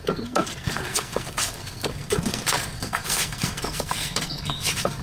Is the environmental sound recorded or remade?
remade